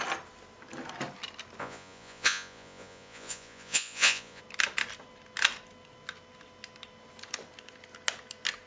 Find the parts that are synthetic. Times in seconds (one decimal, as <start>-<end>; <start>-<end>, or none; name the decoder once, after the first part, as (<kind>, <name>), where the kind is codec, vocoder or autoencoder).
1.6-4.4 (vocoder, Vocos)